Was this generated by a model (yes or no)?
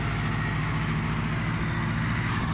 no